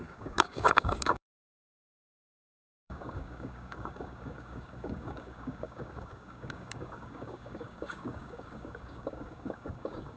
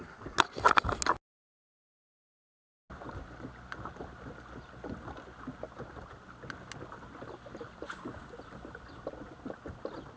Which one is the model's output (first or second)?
first